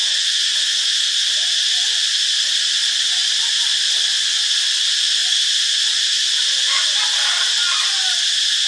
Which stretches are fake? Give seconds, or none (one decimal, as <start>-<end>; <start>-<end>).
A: 0.0-0.9